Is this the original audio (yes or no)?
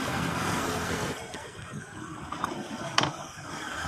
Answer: no